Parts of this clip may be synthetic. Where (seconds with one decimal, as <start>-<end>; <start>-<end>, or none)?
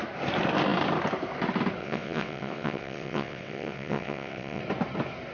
1.8-4.6